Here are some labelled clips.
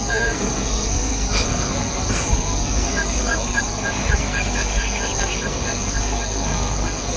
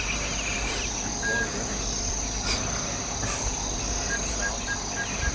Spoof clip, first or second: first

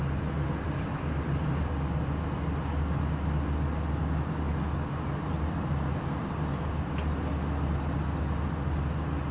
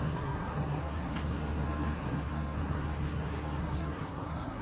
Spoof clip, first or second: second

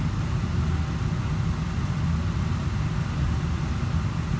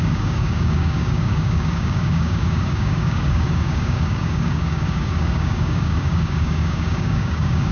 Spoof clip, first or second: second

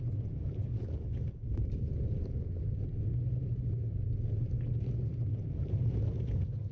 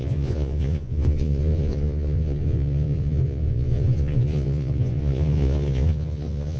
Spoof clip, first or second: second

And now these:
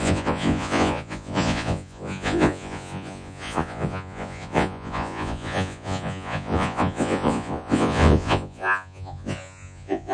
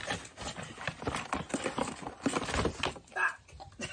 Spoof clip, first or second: first